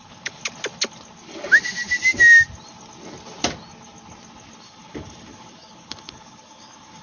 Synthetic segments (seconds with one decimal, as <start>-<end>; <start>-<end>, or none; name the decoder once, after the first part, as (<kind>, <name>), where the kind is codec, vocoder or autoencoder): 0.0-0.4 (codec, DAC); 4.6-7.0